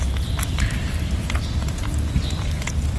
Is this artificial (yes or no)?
no